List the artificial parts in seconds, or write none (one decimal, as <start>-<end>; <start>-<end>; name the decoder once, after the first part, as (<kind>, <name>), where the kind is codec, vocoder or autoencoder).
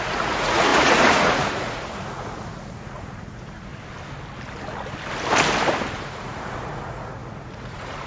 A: 0.0-3.7 (vocoder, Vocos); 6.0-8.1